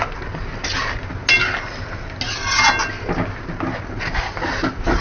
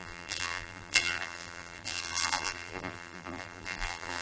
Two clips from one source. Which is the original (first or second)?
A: first